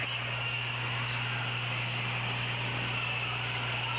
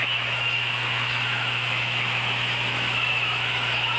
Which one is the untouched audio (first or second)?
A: first